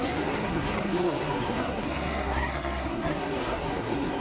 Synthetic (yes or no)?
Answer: yes